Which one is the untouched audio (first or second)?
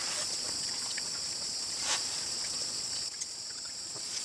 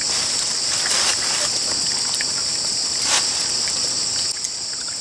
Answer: second